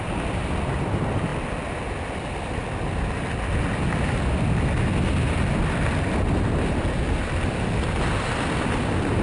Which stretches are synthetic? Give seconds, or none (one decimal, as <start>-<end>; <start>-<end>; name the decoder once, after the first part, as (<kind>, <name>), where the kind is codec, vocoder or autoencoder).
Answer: none